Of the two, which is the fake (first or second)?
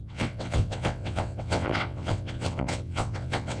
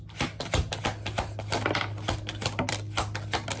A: first